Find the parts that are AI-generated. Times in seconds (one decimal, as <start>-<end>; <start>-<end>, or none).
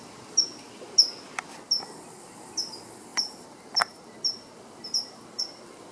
3.1-5.4